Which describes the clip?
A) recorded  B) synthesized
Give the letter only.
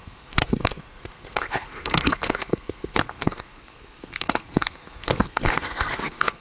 B